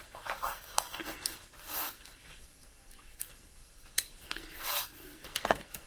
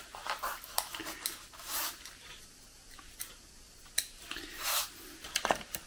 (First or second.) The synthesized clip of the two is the first